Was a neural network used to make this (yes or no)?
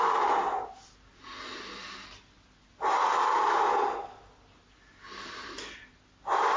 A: no